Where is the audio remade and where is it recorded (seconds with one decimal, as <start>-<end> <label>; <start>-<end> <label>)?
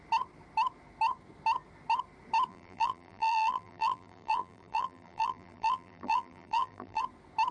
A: 0.0-2.5 recorded; 2.5-7.0 remade; 7.0-7.5 recorded